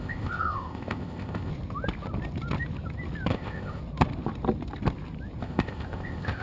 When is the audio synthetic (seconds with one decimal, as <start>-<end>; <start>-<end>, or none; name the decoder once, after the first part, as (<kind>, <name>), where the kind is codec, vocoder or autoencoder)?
0.0-1.5 (codec, ZipCodec); 3.3-3.8; 5.4-6.4

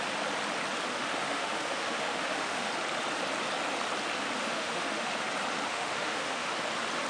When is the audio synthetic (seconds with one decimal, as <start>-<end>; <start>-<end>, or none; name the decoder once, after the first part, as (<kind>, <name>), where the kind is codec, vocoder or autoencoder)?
0.9-2.7 (autoencoder, DAC-VAE); 4.4-5.1; 5.7-6.5

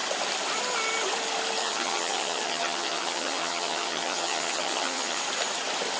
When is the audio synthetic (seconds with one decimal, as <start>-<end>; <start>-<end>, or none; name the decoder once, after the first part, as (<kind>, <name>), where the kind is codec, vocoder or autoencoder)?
1.6-5.2 (vocoder, HiFi-GAN)